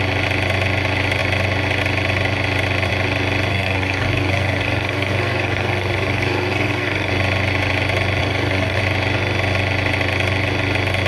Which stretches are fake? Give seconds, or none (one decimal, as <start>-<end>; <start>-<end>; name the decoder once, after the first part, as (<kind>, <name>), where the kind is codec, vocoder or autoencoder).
3.5-7.1 (codec, SNAC); 8.2-8.8